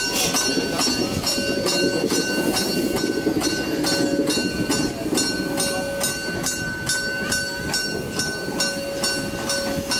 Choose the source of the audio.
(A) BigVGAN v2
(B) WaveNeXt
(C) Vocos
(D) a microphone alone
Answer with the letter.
D